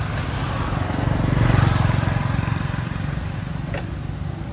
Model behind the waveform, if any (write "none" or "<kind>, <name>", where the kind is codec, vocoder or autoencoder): none